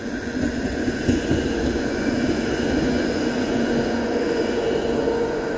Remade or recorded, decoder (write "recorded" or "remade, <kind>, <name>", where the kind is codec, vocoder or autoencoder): remade, vocoder, Vocos